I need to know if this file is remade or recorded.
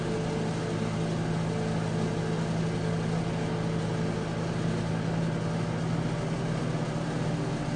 recorded